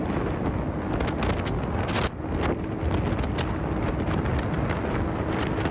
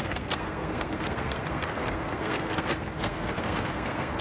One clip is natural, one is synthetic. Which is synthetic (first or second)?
second